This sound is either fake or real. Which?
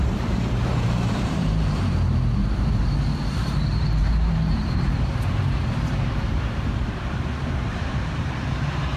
fake